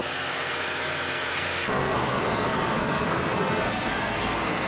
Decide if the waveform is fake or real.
fake